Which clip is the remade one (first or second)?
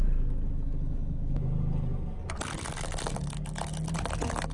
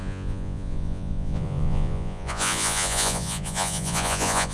second